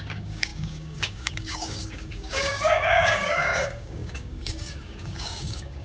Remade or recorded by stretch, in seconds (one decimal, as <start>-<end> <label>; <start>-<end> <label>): 0.0-5.8 remade